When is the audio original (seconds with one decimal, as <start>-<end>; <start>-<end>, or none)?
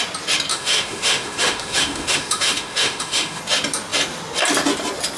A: 0.0-0.5; 3.4-5.2